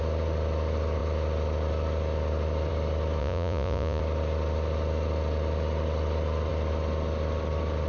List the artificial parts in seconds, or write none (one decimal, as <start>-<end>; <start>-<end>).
3.2-4.0